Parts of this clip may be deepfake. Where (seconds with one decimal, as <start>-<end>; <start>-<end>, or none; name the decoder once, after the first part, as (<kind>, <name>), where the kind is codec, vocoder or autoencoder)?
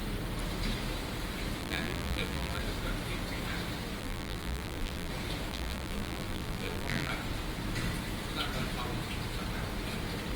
1.6-2.6 (vocoder, BigVGAN v2); 4.0-5.1; 5.5-7.1